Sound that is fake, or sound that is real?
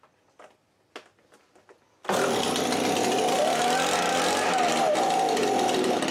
real